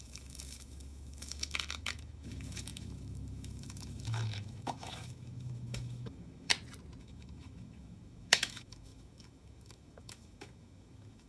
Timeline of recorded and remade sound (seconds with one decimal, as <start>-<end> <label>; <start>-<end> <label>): 0.0-6.5 remade; 6.5-7.0 recorded; 7.0-11.3 remade